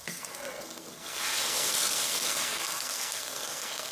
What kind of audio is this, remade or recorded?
remade